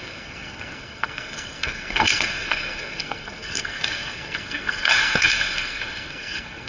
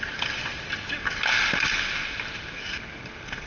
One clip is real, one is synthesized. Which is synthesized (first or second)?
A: first